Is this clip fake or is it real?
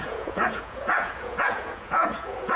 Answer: fake